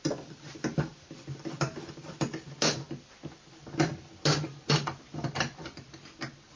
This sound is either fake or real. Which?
real